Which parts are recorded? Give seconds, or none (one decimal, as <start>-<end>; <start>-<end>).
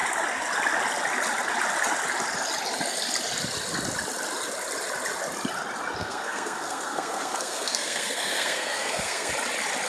0.0-6.0; 9.3-9.9